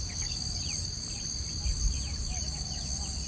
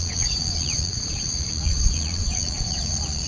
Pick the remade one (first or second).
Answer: second